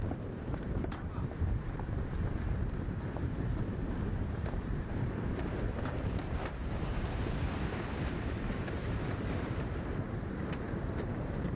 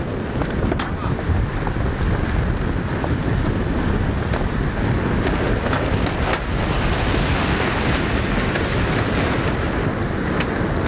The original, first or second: second